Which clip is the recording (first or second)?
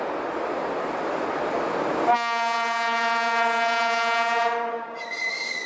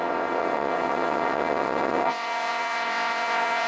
first